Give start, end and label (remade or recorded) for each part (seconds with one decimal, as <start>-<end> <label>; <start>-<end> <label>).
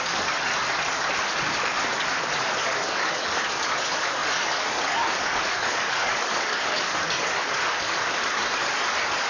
0.0-0.5 remade; 0.5-1.4 recorded; 1.4-1.8 remade; 1.8-2.4 recorded; 2.4-9.3 remade